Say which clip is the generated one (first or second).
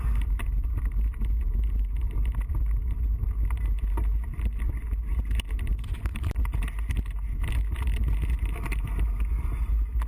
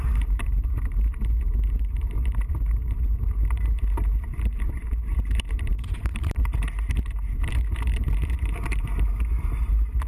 second